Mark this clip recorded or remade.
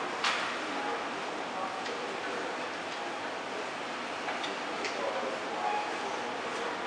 recorded